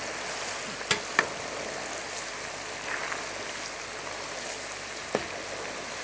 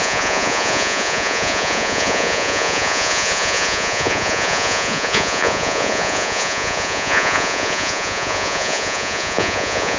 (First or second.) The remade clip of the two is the second